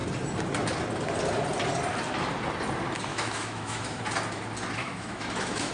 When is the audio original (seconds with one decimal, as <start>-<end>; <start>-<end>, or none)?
0.0-3.1; 4.0-4.8